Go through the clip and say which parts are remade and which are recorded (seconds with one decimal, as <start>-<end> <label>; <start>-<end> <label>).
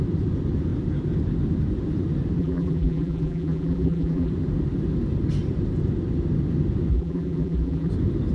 0.0-2.4 recorded; 2.4-4.3 remade; 4.3-6.9 recorded; 6.9-7.9 remade; 7.9-8.3 recorded